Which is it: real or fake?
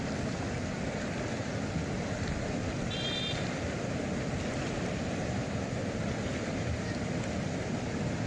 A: real